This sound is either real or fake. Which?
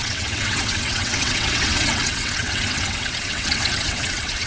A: fake